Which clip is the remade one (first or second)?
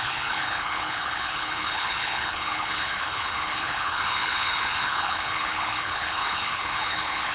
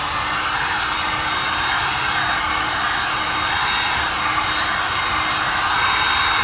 first